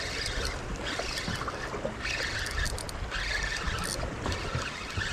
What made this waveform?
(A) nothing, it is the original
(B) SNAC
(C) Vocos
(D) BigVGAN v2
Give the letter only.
A